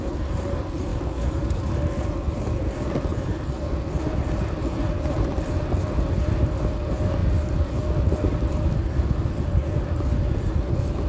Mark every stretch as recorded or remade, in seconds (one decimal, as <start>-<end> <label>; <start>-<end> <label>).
0.0-0.9 recorded; 0.9-1.7 remade; 1.7-11.1 recorded